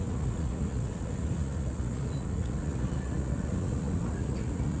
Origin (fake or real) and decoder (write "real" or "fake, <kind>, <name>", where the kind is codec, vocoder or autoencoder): fake, vocoder, Vocos